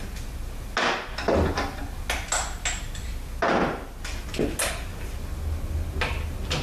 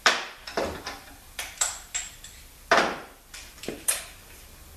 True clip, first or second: first